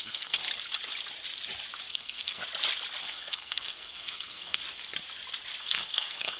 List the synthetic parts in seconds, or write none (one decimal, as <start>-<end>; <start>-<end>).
0.0-0.4; 1.9-2.4; 3.0-4.6; 5.6-6.4